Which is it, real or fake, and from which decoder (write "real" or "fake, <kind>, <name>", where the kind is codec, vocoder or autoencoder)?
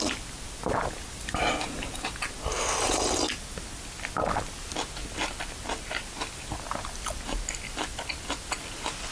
real